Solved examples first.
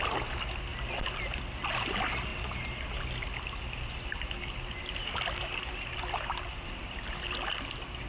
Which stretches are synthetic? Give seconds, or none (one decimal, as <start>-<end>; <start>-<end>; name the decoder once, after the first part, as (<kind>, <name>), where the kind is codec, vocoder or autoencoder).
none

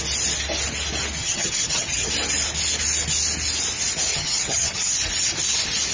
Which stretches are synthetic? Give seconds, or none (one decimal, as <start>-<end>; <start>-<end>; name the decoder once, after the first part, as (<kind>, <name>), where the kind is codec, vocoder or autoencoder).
1.2-2.1 (vocoder, HiFi-GAN); 4.1-4.9

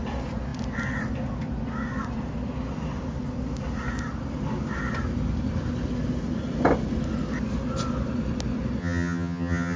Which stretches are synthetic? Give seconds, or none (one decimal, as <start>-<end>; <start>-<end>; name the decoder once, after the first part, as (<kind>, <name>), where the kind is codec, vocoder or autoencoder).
8.8-9.8 (vocoder, HiFi-GAN)